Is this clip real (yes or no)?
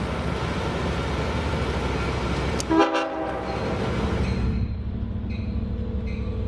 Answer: yes